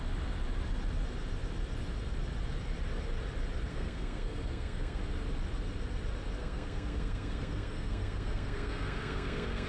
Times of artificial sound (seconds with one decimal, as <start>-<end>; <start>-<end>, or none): 3.7-5.0; 6.4-9.7

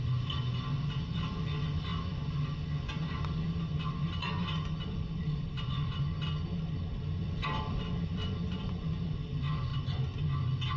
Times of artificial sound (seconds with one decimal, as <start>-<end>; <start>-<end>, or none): 4.4-6.0; 7.2-7.9; 9.7-10.2

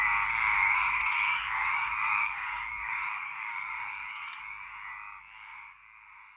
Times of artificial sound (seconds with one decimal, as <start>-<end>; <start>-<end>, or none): 0.6-4.4

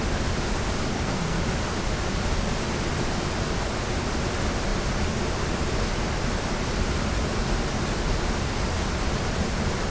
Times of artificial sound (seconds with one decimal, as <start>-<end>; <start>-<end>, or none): 0.9-1.4

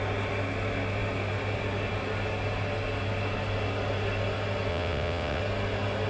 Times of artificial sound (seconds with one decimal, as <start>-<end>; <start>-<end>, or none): 4.7-5.4

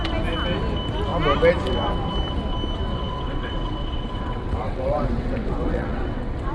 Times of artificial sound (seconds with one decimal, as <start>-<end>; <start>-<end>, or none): 2.9-6.5

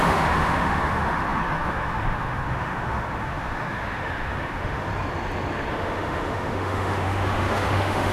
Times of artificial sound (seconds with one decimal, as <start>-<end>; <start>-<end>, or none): 0.0-4.9; 5.7-8.1

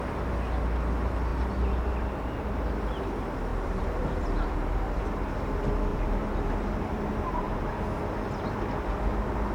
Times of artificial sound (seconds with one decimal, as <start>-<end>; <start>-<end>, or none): 3.5-5.0; 5.9-7.7